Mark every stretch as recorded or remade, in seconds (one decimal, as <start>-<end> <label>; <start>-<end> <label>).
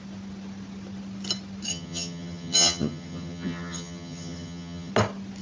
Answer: 0.0-1.7 recorded; 1.7-4.9 remade; 4.9-5.4 recorded